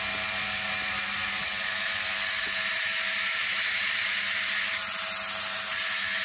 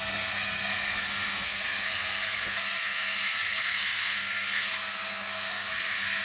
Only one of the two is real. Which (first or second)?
first